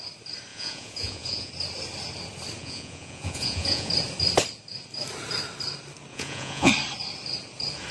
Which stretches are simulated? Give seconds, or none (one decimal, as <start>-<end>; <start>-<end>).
0.5-1.5; 2.6-3.9; 6.1-6.7